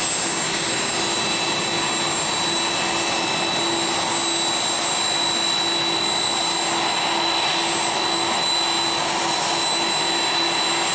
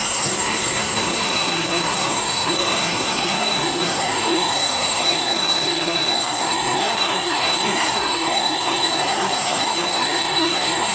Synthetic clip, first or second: second